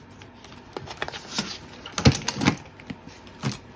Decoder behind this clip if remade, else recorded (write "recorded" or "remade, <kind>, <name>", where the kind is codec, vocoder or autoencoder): recorded